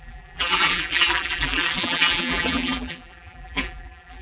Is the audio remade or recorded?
remade